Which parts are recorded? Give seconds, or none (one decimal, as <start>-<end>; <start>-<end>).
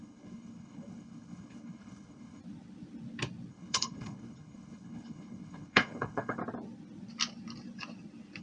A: 2.4-3.5; 6.4-8.4